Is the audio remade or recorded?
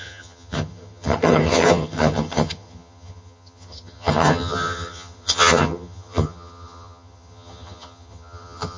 remade